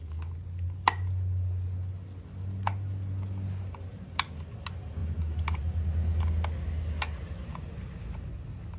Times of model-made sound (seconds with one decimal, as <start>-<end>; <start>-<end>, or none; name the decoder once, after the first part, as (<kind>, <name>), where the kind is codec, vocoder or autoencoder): none